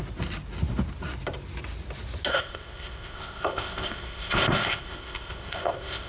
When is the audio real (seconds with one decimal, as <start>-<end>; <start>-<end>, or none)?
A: 0.0-2.3